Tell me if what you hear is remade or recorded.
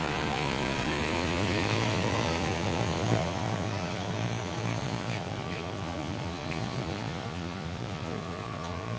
remade